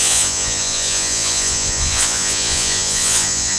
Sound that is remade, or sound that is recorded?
remade